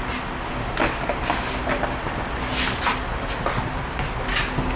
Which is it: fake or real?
real